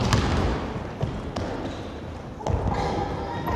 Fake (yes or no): no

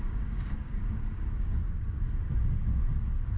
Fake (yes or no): yes